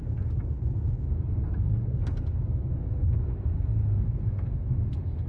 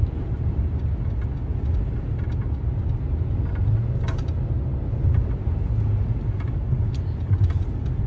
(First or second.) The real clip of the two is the second